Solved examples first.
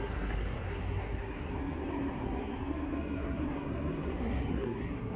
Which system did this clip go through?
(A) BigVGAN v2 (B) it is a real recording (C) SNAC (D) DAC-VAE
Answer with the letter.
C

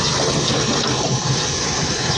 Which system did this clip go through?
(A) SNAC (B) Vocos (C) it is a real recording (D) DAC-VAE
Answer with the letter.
C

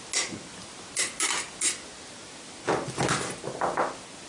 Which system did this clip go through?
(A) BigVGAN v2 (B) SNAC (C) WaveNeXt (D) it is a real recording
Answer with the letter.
D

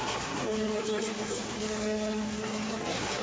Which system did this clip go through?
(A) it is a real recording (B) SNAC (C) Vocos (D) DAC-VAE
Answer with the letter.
B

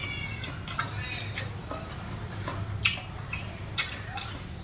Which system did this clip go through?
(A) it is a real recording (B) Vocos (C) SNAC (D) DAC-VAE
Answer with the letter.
A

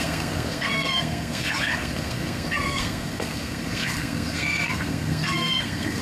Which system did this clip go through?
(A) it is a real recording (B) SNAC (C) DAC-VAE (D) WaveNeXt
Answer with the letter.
B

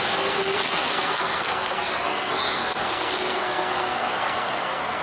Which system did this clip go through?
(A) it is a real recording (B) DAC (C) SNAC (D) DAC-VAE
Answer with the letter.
C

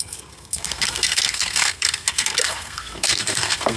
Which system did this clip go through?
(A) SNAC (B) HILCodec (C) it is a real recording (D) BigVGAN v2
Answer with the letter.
A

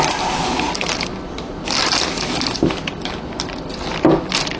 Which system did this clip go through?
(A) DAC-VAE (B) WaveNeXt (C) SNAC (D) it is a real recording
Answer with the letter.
D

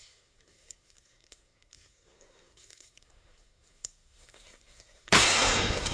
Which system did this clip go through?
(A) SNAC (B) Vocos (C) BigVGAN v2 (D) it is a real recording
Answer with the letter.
A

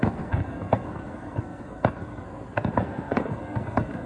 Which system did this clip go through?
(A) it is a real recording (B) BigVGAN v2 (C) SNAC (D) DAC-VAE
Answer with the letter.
C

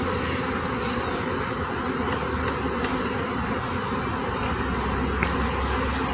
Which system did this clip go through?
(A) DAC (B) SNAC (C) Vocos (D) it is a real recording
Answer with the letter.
D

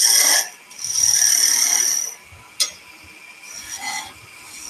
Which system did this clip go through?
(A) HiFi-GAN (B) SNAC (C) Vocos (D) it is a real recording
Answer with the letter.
D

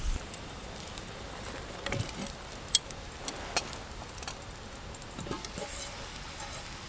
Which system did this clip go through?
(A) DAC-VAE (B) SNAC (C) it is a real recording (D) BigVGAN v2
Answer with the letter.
C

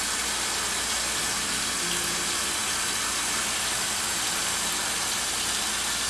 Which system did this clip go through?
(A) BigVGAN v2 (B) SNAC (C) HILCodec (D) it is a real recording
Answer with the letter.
D